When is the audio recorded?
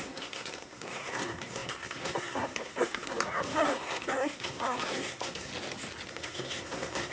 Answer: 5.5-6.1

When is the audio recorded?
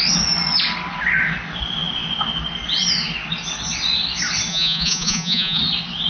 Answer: 0.0-4.5; 5.6-6.1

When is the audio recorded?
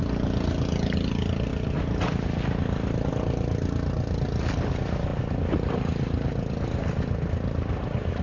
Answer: 0.0-8.2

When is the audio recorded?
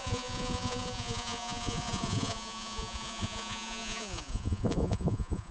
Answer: none